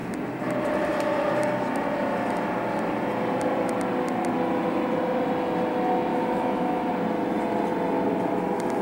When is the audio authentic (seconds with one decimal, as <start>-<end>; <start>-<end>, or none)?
0.0-6.1; 6.9-8.8